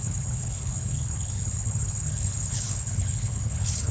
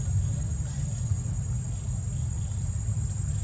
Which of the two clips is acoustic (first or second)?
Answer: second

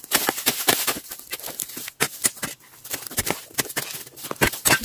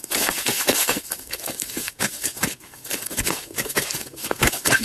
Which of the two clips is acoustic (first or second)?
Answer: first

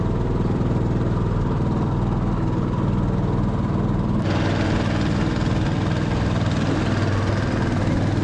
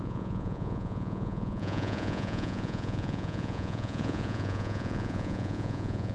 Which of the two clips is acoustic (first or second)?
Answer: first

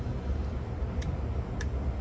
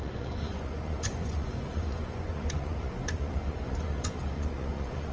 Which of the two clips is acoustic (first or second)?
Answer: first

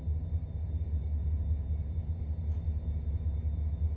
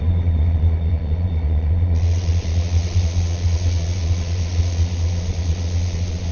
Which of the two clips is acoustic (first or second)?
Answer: first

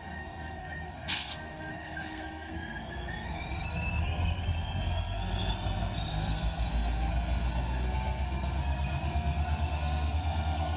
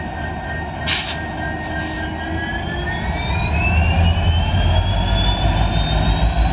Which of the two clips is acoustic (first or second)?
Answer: second